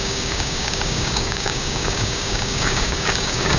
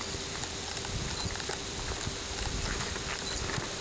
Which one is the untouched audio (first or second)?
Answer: second